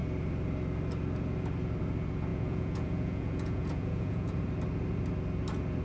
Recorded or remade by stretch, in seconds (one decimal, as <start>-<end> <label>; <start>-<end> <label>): 0.0-2.3 recorded; 2.3-4.4 remade; 4.4-5.8 recorded